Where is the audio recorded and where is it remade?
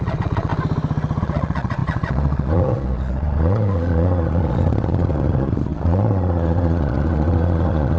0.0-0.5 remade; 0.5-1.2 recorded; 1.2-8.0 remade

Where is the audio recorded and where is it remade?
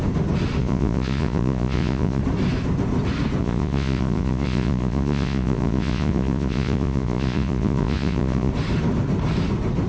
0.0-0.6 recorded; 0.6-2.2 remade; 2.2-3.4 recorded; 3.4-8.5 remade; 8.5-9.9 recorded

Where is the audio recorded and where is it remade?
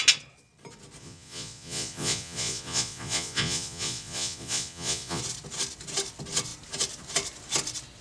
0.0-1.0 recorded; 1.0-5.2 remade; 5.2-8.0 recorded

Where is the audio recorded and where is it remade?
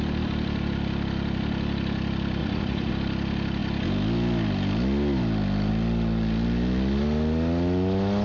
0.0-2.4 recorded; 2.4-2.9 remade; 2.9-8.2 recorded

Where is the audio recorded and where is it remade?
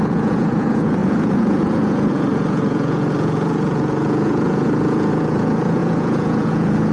0.0-6.9 remade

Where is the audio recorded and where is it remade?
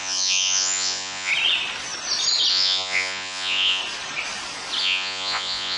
0.0-1.3 remade; 1.3-2.5 recorded; 2.5-3.8 remade; 3.8-4.8 recorded; 4.8-5.8 remade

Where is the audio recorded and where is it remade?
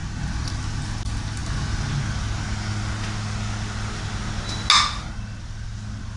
0.0-6.2 recorded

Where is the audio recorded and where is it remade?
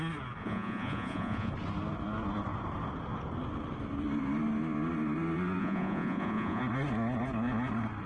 0.0-0.4 recorded; 0.4-1.5 remade; 1.5-5.6 recorded; 5.6-6.6 remade; 6.6-8.1 recorded